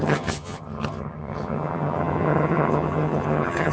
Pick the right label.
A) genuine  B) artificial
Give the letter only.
B